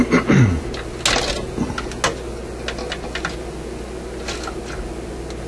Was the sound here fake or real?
real